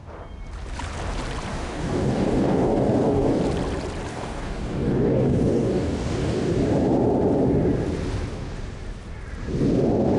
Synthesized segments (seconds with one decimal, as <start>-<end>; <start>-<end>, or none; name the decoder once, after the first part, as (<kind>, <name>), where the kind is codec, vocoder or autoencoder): 1.5-3.4 (codec, DAC); 4.1-6.5